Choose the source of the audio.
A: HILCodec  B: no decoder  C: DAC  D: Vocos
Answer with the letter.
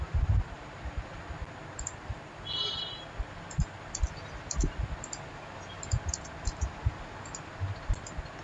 B